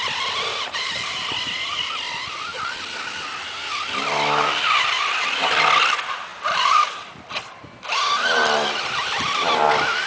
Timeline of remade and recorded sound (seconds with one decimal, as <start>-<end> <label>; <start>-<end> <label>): 0.0-0.5 recorded; 0.5-1.3 remade; 1.3-6.3 recorded; 6.3-7.5 remade; 7.5-10.1 recorded